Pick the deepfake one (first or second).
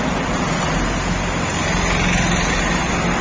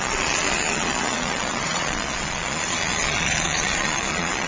second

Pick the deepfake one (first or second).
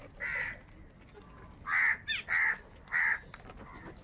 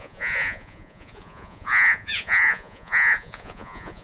second